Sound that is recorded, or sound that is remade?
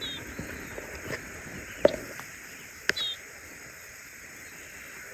recorded